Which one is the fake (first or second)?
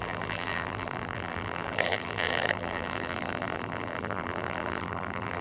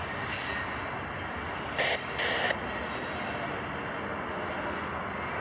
first